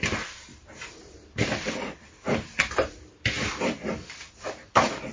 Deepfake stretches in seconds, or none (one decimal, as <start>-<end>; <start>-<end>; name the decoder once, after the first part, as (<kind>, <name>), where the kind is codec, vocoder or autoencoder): 0.0-5.1 (vocoder, BigVGAN v2)